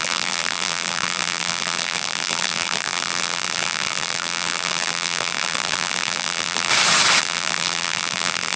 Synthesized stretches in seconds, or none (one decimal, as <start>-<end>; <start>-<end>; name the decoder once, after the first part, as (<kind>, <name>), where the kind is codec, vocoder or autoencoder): 0.0-6.7 (vocoder, BigVGAN v2); 7.2-8.6